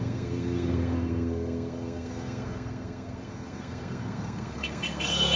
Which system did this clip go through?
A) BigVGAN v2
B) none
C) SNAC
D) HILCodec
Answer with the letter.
C